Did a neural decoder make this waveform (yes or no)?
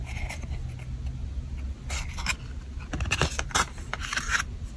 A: no